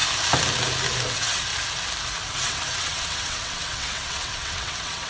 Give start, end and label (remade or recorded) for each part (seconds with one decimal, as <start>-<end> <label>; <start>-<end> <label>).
0.0-1.1 recorded; 1.1-1.5 remade; 1.5-2.3 recorded; 2.3-5.1 remade